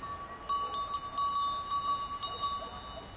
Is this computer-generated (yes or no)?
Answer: no